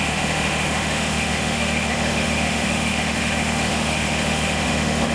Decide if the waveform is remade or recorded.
remade